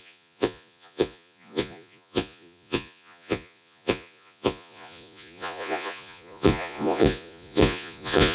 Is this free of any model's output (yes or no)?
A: no